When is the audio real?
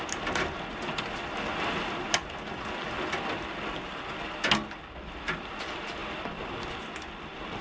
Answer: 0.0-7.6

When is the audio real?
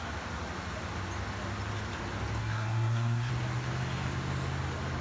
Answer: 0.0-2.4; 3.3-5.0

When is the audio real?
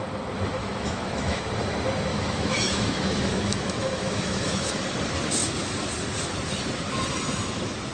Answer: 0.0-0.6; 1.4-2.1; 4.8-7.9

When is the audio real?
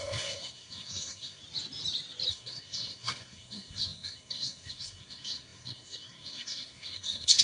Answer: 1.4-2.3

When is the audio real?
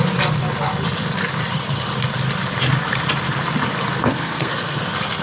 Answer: 0.0-4.0; 4.8-5.2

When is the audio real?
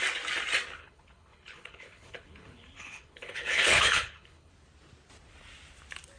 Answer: 0.0-0.8; 4.5-6.2